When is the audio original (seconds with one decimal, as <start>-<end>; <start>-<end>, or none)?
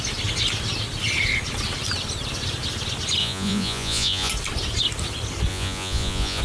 0.0-3.2; 4.3-5.5